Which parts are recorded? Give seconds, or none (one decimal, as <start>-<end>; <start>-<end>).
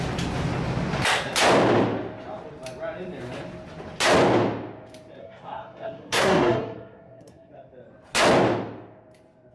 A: 0.0-5.2; 7.5-9.5